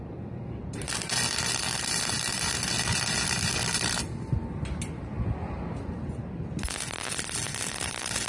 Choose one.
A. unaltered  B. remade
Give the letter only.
A